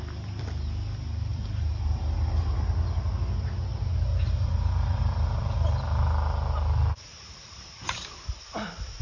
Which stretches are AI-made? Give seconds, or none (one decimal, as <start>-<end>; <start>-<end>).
1.3-2.6; 4.1-6.0